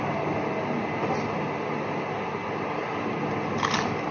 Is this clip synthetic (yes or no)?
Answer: no